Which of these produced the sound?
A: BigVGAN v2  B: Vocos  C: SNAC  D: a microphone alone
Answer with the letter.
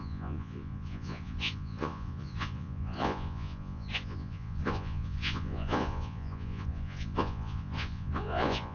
B